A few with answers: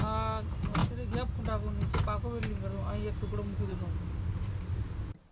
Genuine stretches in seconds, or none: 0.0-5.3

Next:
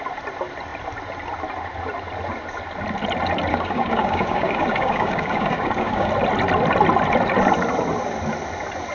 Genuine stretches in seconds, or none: 0.0-3.5; 6.1-8.9

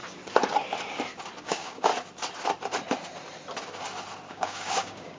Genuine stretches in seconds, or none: 0.0-1.4; 1.9-4.3

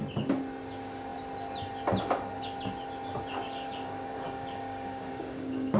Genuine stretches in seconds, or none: 0.0-3.3